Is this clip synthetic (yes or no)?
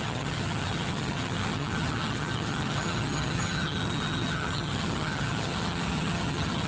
yes